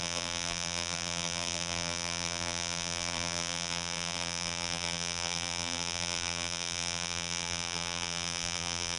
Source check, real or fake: fake